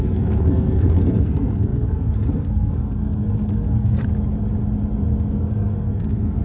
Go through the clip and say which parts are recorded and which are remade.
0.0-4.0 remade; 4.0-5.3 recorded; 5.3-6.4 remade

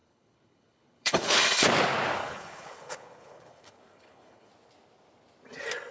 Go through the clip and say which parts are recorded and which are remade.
0.0-1.4 remade; 1.4-2.2 recorded; 2.2-4.5 remade; 4.5-5.9 recorded

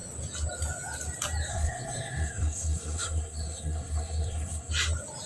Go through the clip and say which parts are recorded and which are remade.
0.0-1.5 recorded; 1.5-4.7 remade; 4.7-5.3 recorded

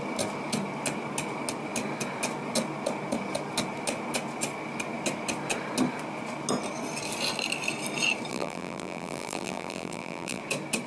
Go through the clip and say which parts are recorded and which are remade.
0.0-8.3 recorded; 8.3-10.4 remade; 10.4-10.9 recorded

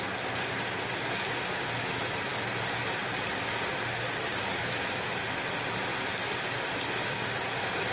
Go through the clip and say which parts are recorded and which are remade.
0.0-7.9 recorded

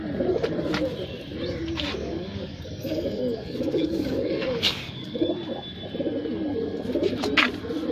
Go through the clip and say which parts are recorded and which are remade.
0.0-1.9 recorded; 1.9-5.3 remade; 5.3-7.9 recorded

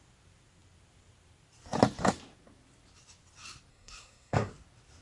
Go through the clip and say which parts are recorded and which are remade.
0.0-3.7 recorded; 3.7-4.5 remade; 4.5-5.0 recorded

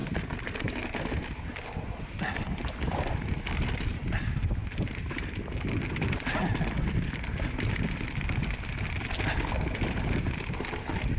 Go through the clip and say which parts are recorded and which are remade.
0.0-11.2 recorded